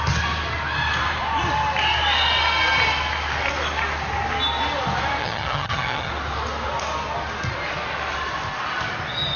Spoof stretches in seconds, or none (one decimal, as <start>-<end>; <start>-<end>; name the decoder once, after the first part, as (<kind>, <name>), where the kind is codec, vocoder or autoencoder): 5.2-6.1 (vocoder, HiFi-GAN)